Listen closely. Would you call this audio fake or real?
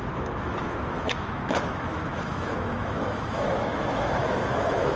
fake